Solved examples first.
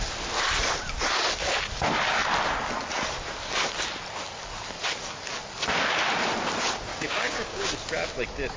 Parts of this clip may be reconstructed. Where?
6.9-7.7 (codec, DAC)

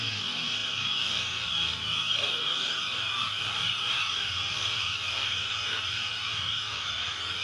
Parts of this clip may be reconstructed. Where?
0.0-7.4 (codec, DAC)

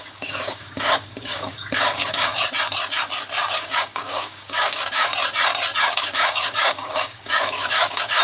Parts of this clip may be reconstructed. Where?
0.0-2.3 (codec, DAC); 3.5-5.1; 5.8-8.2

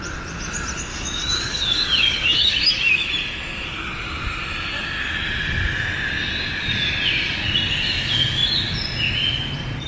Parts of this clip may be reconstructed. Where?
0.9-3.1 (codec, DAC)

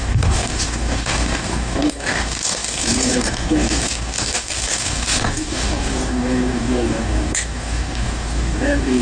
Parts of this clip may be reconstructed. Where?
0.0-9.0 (codec, DAC)